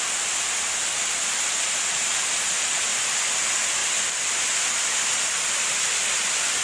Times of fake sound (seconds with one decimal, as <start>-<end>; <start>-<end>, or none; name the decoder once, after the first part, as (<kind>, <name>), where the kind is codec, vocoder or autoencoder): none